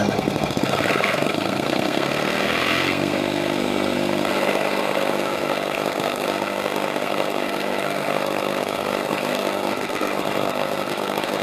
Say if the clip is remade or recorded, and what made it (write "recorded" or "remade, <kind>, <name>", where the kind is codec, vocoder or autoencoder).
remade, codec, SNAC